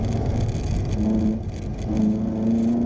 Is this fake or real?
real